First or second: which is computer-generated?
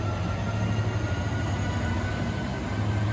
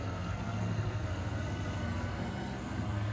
second